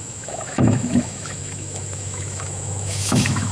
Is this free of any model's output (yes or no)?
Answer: no